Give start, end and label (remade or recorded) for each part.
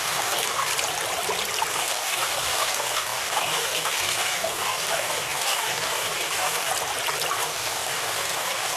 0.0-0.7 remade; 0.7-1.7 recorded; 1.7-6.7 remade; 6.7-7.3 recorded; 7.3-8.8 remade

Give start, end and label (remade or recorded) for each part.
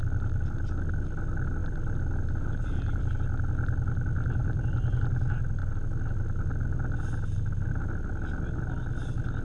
0.0-1.6 recorded; 1.6-3.1 remade; 3.1-4.4 recorded; 4.4-5.0 remade; 5.0-9.4 recorded